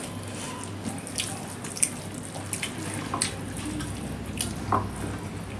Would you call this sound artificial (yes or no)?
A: no